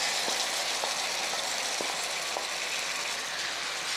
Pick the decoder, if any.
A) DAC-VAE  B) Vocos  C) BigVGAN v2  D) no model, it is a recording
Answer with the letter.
D